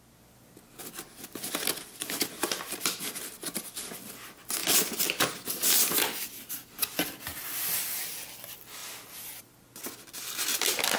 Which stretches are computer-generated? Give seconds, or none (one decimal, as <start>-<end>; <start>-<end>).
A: none